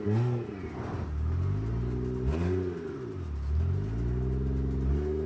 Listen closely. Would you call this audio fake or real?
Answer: real